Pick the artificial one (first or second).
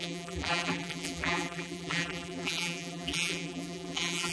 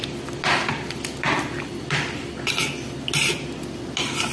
first